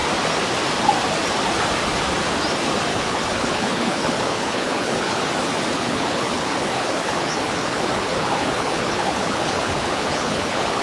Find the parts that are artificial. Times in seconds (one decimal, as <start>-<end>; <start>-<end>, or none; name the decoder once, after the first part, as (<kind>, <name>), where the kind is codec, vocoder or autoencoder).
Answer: 2.9-5.2 (codec, HILCodec); 5.7-10.8